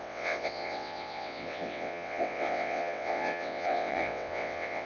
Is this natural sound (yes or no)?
no